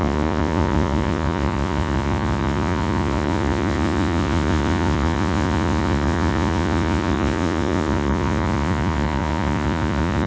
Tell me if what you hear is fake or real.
fake